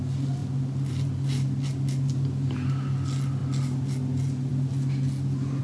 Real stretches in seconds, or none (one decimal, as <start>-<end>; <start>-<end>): 0.0-5.6